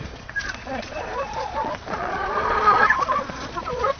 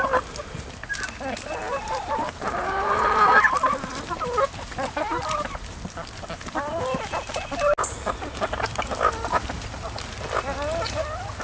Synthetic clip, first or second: first